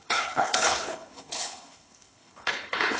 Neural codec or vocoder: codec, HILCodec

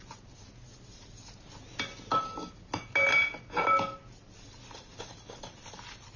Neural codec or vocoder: none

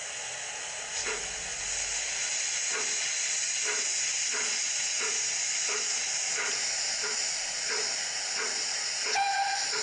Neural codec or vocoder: none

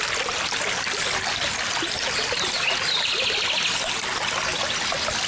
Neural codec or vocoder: none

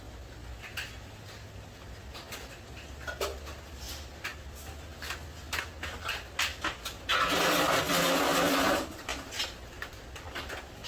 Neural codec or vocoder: none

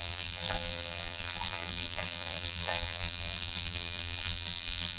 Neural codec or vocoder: vocoder, BigVGAN v2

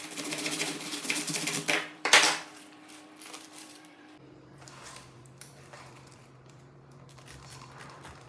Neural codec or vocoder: vocoder, BigVGAN v2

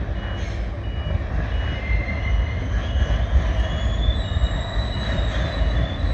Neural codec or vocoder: none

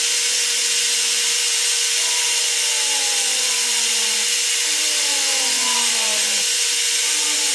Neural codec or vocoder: vocoder, Vocos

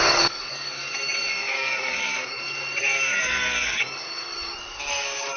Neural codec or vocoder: codec, DAC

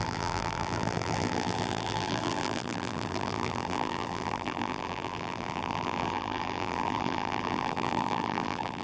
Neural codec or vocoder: vocoder, BigVGAN v2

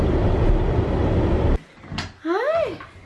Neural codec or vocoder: none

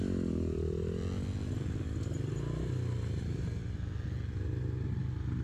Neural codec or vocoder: none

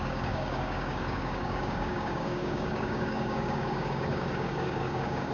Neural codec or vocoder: codec, DAC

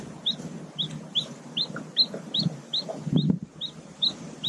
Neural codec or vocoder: none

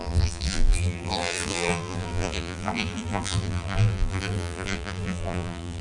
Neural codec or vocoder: vocoder, BigVGAN v2